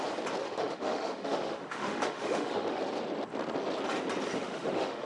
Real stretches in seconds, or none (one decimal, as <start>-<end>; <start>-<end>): 0.0-0.4; 2.8-4.4